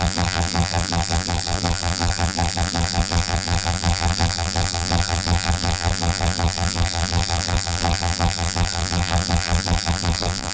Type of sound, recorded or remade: remade